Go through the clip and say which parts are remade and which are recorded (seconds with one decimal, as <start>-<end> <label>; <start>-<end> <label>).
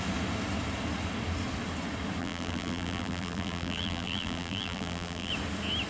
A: 0.0-2.2 recorded; 2.2-5.3 remade; 5.3-5.9 recorded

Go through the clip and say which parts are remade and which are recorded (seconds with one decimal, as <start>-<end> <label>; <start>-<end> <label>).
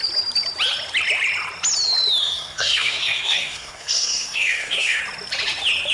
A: 0.0-2.2 recorded; 2.2-5.0 remade; 5.0-5.9 recorded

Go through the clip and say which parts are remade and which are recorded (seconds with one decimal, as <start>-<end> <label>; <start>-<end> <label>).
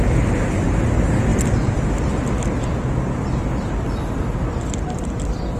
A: 0.0-5.6 recorded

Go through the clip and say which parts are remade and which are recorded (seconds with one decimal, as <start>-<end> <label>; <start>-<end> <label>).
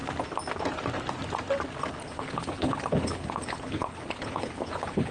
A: 0.0-2.0 recorded; 2.0-5.1 remade